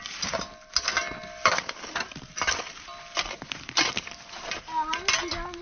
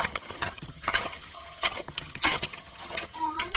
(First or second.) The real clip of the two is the first